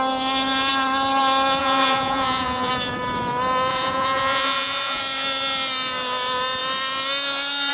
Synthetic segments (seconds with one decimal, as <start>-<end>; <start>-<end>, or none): 1.6-2.7; 3.7-5.0